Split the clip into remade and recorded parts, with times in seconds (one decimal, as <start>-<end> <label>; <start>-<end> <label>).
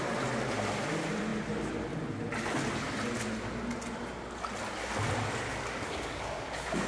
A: 0.0-5.5 recorded; 5.5-6.9 remade